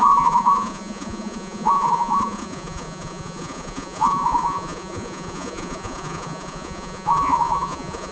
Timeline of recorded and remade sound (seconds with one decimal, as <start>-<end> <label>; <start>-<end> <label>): 0.0-8.1 remade

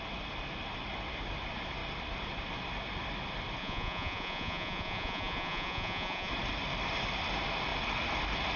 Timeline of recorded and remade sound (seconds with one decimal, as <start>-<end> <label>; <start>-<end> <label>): 0.0-3.6 recorded; 3.6-6.3 remade; 6.3-8.6 recorded

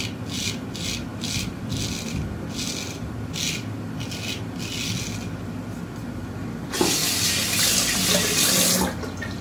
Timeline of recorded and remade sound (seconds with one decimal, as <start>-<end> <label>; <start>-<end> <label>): 0.0-9.4 recorded

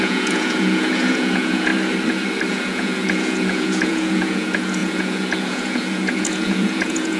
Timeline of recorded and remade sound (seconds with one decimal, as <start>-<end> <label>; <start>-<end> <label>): 0.0-1.7 remade; 1.7-2.5 recorded; 2.5-7.2 remade

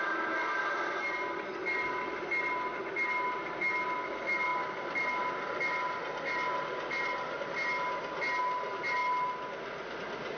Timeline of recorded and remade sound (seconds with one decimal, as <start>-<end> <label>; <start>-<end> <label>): 0.0-10.4 recorded

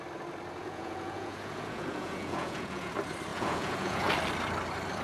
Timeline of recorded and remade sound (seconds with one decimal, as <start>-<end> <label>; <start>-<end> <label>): 0.0-0.6 recorded; 0.6-2.9 remade; 2.9-3.3 recorded; 3.3-4.1 remade; 4.1-5.0 recorded

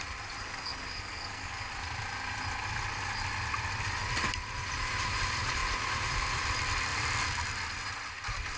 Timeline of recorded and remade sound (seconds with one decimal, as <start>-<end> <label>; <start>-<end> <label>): 0.0-0.4 recorded; 0.4-1.7 remade; 1.7-8.6 recorded